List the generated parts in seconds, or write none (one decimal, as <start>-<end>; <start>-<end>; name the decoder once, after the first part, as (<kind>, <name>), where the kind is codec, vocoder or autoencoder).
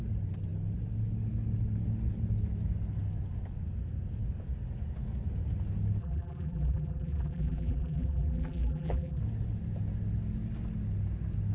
6.0-9.2 (vocoder, BigVGAN v2)